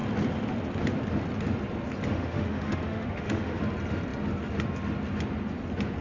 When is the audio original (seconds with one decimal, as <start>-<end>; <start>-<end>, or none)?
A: 0.0-2.1; 3.6-6.0

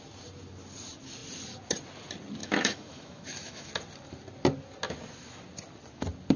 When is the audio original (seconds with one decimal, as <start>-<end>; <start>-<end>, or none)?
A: 0.0-2.4; 3.7-6.4

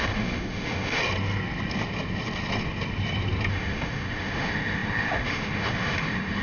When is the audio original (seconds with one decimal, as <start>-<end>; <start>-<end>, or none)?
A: 1.0-3.5

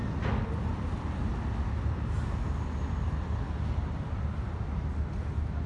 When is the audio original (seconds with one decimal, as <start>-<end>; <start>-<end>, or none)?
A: 0.0-5.7

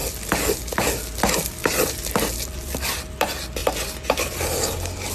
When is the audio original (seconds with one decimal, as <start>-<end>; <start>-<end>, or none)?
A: 0.0-5.1

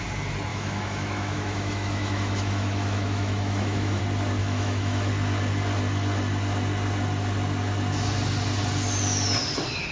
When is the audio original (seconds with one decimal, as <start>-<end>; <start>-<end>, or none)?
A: 0.0-0.5; 4.0-4.4; 5.1-9.9

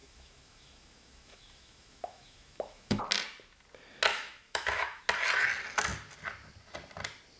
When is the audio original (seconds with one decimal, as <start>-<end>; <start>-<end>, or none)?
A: 3.0-4.1; 5.0-7.4

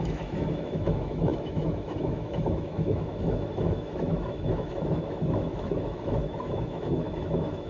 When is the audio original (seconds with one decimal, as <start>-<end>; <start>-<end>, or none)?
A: none